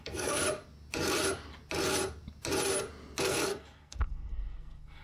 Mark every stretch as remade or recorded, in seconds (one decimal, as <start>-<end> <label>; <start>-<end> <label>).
0.0-0.4 remade; 0.4-3.2 recorded; 3.2-5.0 remade